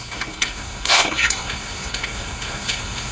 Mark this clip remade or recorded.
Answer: remade